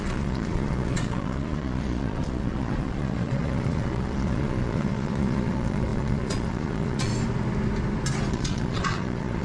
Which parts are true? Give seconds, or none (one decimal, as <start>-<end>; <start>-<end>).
7.1-8.3